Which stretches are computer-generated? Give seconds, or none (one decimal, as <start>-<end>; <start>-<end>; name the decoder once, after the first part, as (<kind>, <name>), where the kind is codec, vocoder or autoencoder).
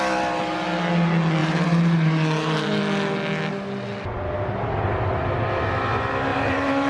1.4-2.8 (vocoder, BigVGAN v2); 6.3-6.9